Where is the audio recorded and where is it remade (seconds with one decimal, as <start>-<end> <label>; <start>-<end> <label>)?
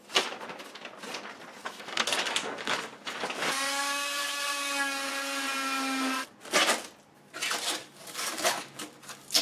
0.0-1.6 recorded; 1.6-5.1 remade; 5.1-7.8 recorded; 7.8-9.4 remade